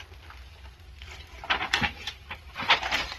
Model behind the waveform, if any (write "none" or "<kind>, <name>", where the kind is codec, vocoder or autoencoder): none